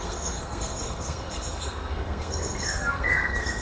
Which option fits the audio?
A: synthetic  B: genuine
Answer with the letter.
A